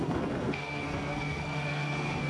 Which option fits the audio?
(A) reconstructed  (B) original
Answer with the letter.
A